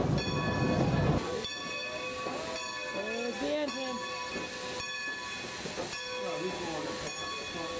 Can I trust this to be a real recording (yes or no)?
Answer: yes